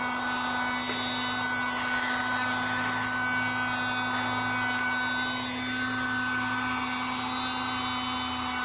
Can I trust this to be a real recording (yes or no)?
yes